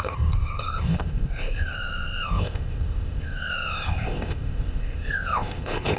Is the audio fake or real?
fake